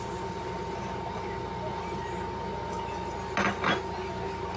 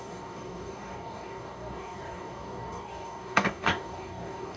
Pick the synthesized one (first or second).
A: second